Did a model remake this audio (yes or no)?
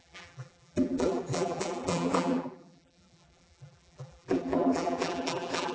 yes